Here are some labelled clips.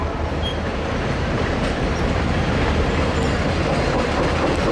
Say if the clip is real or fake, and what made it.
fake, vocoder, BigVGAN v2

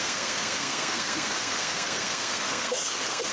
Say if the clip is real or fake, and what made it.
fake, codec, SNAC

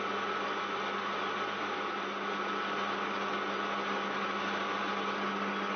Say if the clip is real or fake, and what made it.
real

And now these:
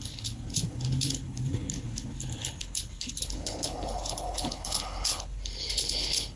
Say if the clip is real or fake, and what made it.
fake, codec, HILCodec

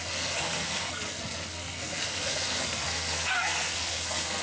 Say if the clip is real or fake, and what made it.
fake, codec, SNAC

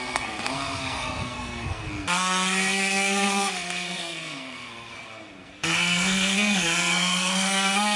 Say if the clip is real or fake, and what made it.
fake, codec, SNAC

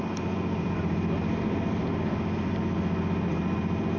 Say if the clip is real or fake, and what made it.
fake, vocoder, BigVGAN v2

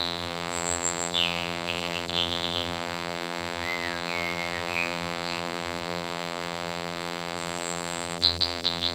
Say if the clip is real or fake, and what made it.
fake, vocoder, BigVGAN v2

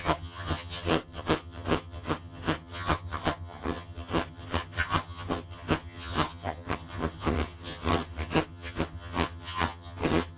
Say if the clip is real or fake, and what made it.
fake, vocoder, HiFi-GAN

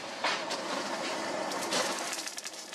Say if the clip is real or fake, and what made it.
fake, vocoder, BigVGAN v2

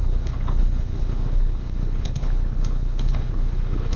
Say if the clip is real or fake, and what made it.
fake, codec, HILCodec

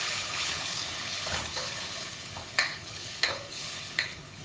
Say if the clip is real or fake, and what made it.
fake, codec, HILCodec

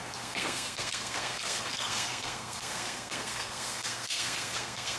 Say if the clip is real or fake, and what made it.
fake, codec, SNAC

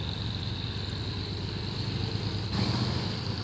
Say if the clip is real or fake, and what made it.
real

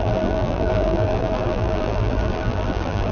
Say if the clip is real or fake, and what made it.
fake, vocoder, BigVGAN v2